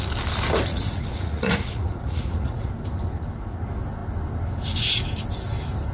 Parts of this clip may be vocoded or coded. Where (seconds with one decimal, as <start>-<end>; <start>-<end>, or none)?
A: 0.7-2.7